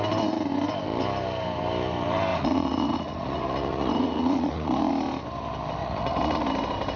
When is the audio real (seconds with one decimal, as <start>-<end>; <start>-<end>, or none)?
0.0-2.3; 4.9-5.8; 6.4-7.0